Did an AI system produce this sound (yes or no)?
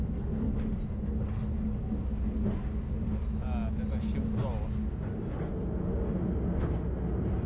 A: no